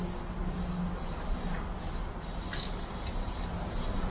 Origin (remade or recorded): recorded